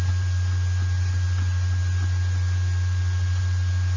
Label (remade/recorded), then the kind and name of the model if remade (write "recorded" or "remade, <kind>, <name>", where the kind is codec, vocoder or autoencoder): recorded